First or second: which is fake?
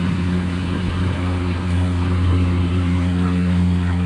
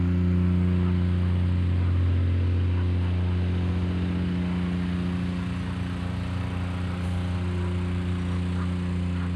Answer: first